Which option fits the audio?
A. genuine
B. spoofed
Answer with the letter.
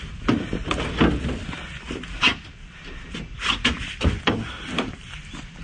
A